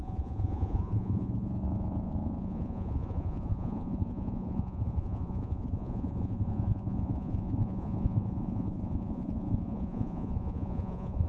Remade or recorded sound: remade